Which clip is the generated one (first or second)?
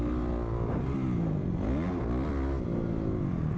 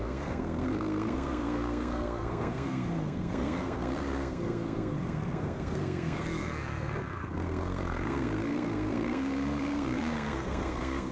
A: second